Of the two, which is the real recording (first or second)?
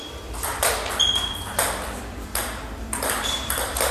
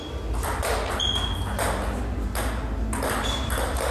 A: second